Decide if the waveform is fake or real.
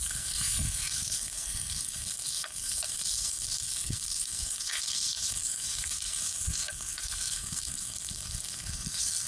fake